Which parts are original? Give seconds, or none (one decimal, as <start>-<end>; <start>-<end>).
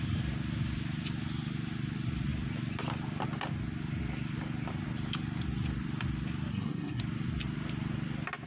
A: 0.0-6.5; 7.0-8.5